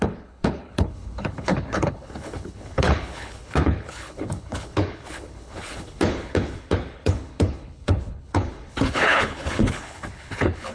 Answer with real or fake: fake